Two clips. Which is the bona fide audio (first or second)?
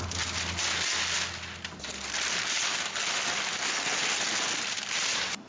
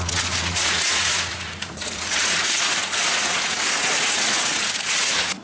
first